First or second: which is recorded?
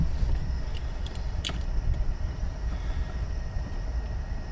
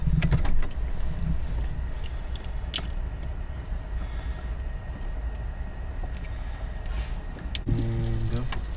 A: second